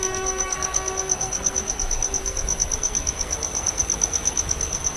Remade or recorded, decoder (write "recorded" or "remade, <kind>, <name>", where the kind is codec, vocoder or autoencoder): remade, codec, SNAC